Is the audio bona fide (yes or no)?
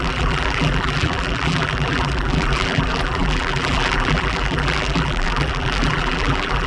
no